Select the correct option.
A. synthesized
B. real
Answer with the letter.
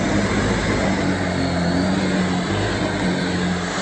B